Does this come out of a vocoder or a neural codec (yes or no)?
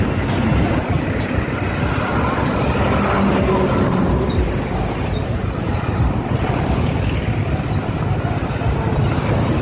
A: no